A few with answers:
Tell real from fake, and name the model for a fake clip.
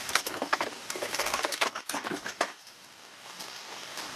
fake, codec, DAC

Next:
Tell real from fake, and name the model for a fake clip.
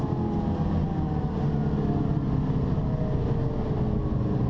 real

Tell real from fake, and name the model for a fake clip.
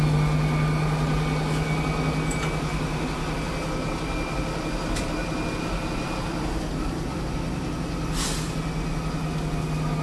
real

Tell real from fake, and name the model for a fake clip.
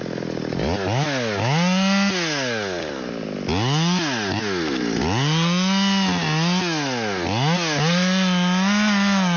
real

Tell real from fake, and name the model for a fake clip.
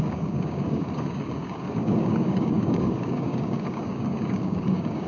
fake, codec, DAC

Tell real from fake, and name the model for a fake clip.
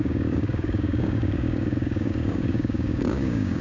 fake, codec, DAC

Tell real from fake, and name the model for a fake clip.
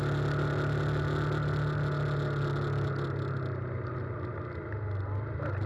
real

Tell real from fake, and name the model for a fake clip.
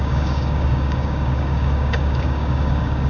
fake, codec, DAC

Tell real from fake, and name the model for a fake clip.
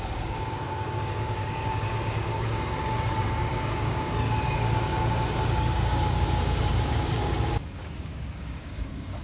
fake, codec, DAC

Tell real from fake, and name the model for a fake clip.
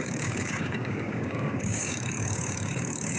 fake, codec, DAC